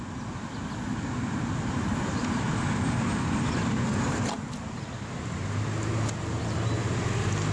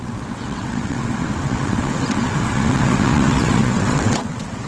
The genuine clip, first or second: first